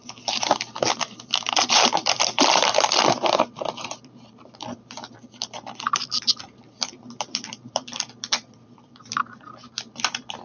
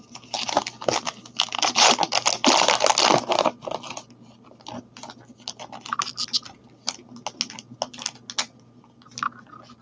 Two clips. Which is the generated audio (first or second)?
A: first